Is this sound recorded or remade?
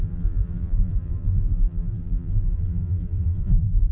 remade